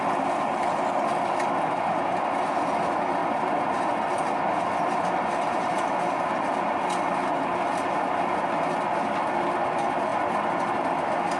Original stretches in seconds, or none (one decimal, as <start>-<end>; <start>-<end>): 0.0-11.4